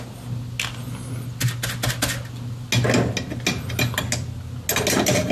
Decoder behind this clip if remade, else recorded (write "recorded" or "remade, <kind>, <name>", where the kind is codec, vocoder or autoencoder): recorded